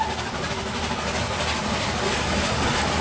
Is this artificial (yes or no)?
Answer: no